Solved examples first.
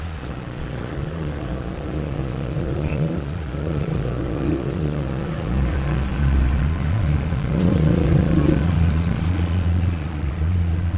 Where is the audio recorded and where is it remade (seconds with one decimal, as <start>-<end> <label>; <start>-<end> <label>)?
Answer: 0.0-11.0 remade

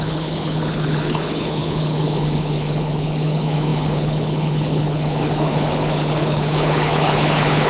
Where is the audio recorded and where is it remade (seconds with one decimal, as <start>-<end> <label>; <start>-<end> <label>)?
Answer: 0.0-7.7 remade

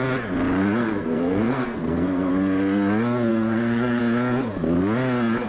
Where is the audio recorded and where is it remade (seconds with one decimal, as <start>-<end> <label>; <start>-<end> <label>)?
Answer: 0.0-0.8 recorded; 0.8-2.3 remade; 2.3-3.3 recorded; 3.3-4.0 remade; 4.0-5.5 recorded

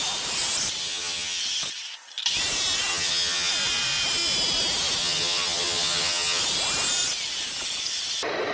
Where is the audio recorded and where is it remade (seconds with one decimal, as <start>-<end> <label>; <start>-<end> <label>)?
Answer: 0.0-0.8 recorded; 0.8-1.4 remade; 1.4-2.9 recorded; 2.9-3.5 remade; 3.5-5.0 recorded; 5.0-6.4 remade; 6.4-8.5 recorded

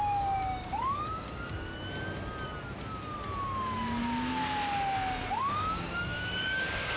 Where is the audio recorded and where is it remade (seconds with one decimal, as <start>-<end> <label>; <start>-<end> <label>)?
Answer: 0.0-1.7 remade; 1.7-5.4 recorded; 5.4-7.0 remade

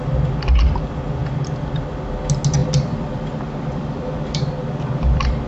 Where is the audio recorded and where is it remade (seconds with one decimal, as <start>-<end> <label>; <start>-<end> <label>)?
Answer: 0.0-2.6 recorded; 2.6-5.5 remade

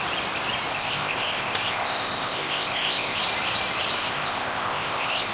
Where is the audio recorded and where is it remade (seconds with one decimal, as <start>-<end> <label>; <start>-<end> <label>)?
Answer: 0.0-0.7 recorded; 0.7-3.2 remade; 3.2-4.0 recorded; 4.0-5.3 remade

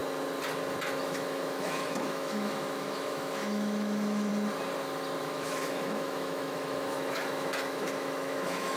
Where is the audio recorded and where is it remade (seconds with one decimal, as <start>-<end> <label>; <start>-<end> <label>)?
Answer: 0.0-1.0 recorded; 1.0-4.3 remade; 4.3-5.2 recorded; 5.2-8.8 remade